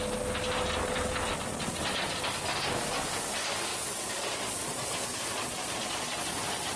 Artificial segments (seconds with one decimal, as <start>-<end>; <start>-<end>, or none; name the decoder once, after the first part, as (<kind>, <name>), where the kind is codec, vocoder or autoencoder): 3.7-6.2 (vocoder, Vocos)